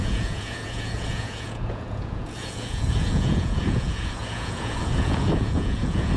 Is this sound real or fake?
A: fake